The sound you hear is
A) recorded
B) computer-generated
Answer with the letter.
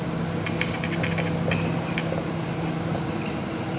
A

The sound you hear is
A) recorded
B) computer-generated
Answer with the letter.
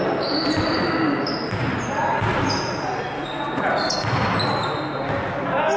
A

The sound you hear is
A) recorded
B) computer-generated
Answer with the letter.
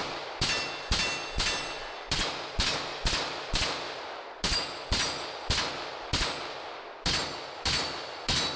A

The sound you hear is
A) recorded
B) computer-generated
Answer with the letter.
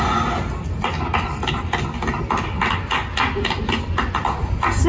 A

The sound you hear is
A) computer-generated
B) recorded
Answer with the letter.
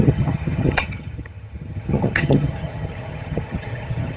A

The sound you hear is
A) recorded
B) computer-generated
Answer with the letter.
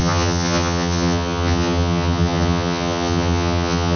B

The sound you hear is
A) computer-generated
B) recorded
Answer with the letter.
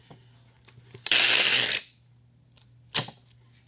B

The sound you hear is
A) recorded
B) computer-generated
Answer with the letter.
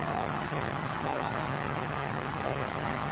B